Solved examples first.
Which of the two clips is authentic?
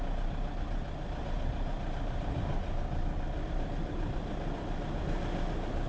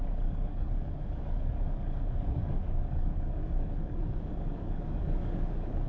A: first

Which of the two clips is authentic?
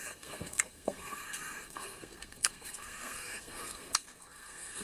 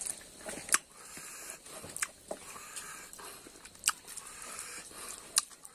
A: second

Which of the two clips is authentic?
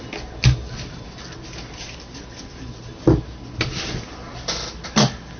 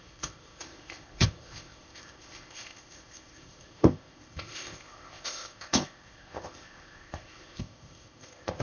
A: first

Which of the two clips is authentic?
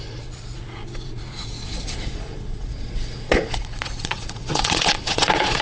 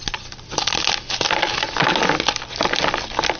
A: second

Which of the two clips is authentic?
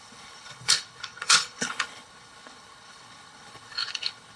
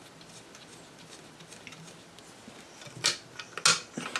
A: second